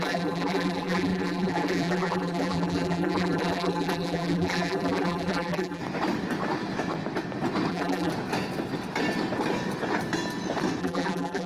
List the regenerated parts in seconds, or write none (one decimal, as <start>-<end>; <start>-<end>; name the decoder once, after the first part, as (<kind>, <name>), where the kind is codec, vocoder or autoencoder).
0.0-5.8 (vocoder, BigVGAN v2); 7.7-8.1; 10.8-11.5